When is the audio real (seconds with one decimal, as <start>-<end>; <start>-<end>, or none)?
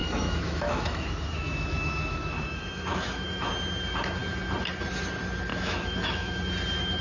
3.5-5.5; 6.4-7.0